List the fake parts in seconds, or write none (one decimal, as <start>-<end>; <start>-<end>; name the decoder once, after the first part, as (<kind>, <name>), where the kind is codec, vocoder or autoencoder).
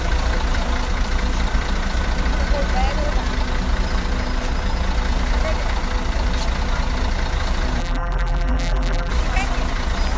7.8-9.1 (vocoder, BigVGAN v2)